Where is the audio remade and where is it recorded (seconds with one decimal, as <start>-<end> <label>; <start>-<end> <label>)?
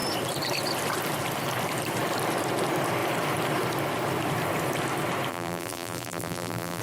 0.0-5.3 recorded; 5.3-6.8 remade